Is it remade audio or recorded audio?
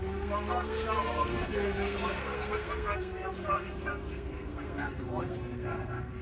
remade